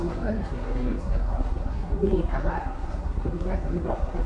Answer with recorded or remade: remade